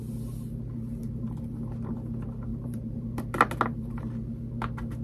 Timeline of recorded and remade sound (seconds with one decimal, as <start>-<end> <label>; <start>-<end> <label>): 0.0-1.0 recorded; 1.0-1.5 remade; 1.5-2.5 recorded; 2.5-3.0 remade; 3.0-5.0 recorded